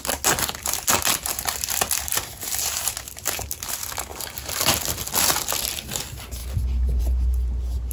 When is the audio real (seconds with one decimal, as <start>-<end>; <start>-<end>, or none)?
0.0-6.4; 7.0-7.9